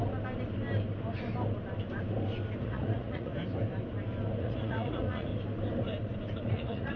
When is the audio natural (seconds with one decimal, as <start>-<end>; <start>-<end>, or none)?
0.0-2.6; 3.3-4.4; 5.3-6.5